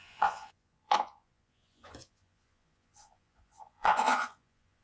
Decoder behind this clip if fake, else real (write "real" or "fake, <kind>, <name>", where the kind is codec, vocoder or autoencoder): fake, vocoder, Vocos